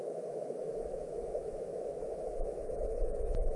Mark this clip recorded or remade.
remade